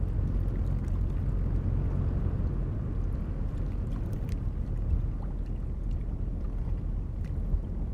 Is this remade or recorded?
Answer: recorded